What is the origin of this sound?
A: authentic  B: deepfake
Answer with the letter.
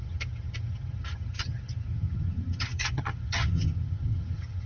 B